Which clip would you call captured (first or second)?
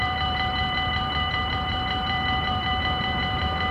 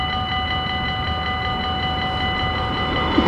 second